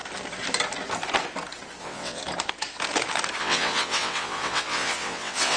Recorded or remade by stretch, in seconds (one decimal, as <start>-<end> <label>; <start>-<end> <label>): 0.0-1.8 recorded; 1.8-2.2 remade; 2.2-3.4 recorded; 3.4-5.6 remade